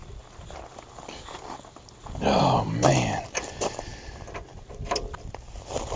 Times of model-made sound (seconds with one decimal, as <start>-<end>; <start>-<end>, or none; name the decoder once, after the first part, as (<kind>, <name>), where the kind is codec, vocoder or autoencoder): none